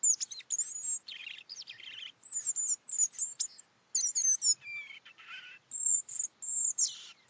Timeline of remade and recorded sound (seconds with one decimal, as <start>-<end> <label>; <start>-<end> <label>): 0.0-7.3 recorded